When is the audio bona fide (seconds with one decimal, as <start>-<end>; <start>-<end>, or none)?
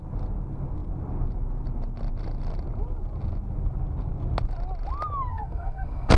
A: 0.0-5.3